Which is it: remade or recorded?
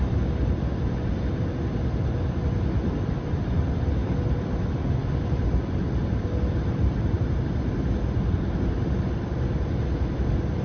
recorded